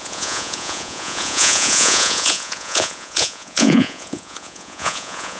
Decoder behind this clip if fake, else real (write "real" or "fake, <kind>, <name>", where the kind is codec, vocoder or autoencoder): fake, vocoder, Vocos